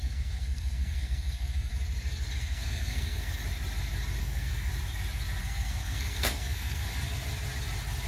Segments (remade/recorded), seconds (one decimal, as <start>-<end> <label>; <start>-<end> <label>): 0.0-1.7 remade; 1.7-2.4 recorded; 2.4-3.4 remade; 3.4-4.2 recorded; 4.2-4.7 remade; 4.7-5.4 recorded; 5.4-6.9 remade; 6.9-8.1 recorded